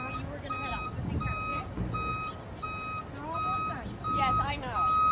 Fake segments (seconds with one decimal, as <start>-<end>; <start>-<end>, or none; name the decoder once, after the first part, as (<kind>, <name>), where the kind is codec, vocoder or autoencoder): none